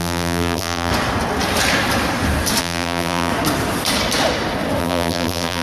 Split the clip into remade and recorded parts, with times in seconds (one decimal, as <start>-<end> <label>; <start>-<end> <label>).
0.0-0.9 remade; 0.9-2.6 recorded; 2.6-3.3 remade; 3.3-4.8 recorded; 4.8-5.6 remade